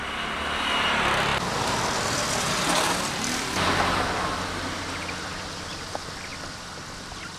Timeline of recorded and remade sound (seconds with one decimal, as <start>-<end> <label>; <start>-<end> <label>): 0.0-7.4 recorded